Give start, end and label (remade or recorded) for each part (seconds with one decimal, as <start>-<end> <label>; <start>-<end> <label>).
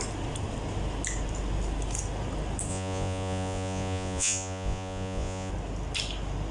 0.0-2.7 recorded; 2.7-5.5 remade; 5.5-6.5 recorded